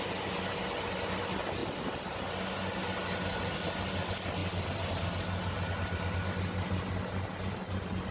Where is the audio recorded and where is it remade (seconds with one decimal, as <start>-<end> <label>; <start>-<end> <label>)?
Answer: 0.0-8.1 recorded